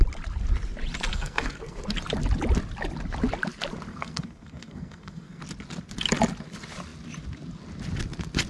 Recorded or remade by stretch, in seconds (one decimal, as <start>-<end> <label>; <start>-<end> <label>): 0.0-1.1 recorded; 1.1-1.8 remade; 1.8-3.9 recorded; 3.9-5.4 remade; 5.4-8.5 recorded

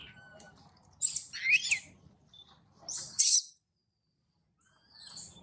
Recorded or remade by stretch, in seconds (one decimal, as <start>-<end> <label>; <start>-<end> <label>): 0.0-5.4 recorded

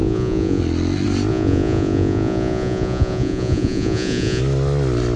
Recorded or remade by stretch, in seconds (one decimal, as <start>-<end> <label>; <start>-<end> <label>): 0.0-0.6 remade; 0.6-1.3 recorded; 1.3-4.4 remade; 4.4-5.2 recorded

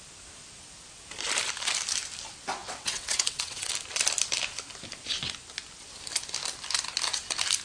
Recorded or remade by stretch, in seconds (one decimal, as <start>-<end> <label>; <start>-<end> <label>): 0.0-2.6 recorded; 2.6-3.7 remade; 3.7-7.6 recorded

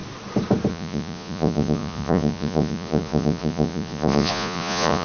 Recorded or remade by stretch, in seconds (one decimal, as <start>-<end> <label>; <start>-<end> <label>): 0.0-0.7 recorded; 0.7-5.0 remade

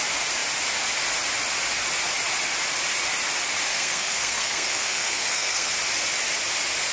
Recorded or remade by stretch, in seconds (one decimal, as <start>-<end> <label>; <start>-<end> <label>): 0.0-3.7 recorded; 3.7-5.7 remade; 5.7-6.9 recorded